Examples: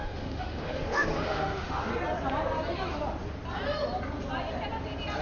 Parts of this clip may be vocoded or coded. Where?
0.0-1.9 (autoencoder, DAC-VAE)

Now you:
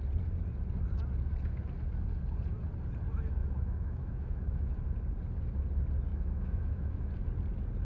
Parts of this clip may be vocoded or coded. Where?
3.4-4.8 (autoencoder, DAC-VAE); 6.1-7.1